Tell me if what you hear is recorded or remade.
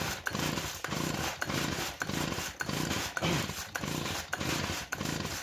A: recorded